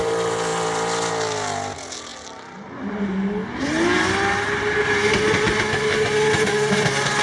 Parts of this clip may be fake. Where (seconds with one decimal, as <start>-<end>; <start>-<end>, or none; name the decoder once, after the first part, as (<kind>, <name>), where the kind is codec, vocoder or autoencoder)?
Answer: 0.5-1.1 (vocoder, BigVGAN v2)